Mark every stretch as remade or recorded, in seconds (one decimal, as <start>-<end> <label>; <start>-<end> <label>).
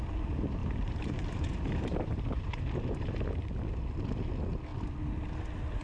0.0-0.6 recorded; 0.6-3.2 remade; 3.2-5.8 recorded